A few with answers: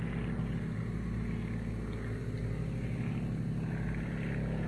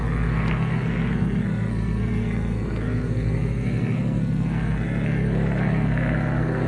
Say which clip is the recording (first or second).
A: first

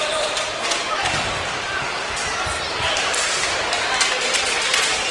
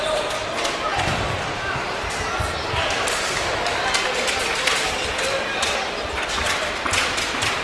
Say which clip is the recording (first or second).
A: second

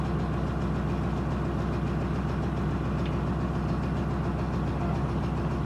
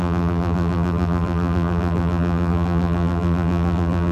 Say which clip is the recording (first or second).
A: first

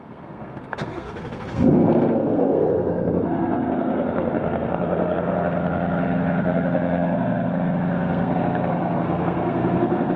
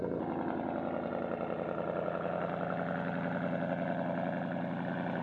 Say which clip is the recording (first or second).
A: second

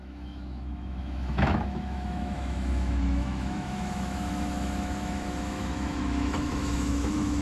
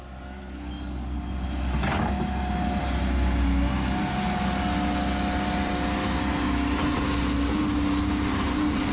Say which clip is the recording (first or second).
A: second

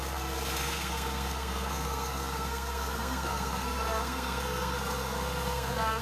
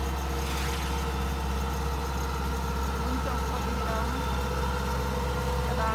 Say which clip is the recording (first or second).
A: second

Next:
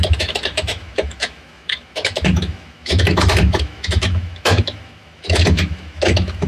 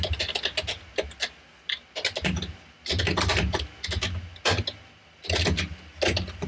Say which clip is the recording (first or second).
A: second